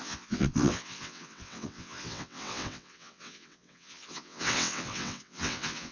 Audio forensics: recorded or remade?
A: remade